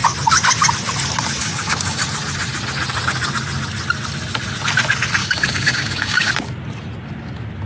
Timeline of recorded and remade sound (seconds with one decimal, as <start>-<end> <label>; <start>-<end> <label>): 0.0-1.4 recorded; 1.4-2.0 remade; 2.0-5.2 recorded; 5.2-6.3 remade; 6.3-7.7 recorded